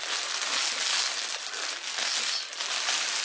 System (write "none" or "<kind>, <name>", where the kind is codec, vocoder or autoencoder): none